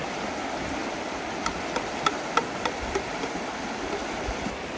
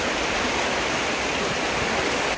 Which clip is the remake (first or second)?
first